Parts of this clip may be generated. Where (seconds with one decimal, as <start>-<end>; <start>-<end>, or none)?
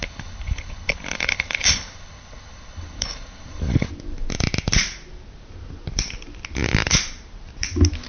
0.0-3.9